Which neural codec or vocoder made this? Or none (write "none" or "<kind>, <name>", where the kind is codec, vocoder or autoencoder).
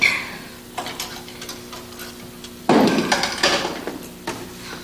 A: none